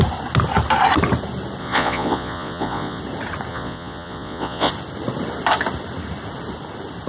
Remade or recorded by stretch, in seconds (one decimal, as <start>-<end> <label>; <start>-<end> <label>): 0.0-1.6 recorded; 1.6-3.0 remade; 3.0-3.5 recorded; 3.5-4.7 remade; 4.7-7.1 recorded